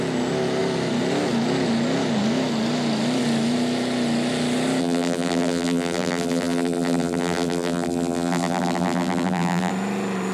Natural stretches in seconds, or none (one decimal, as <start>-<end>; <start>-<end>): 0.0-4.8; 9.7-10.3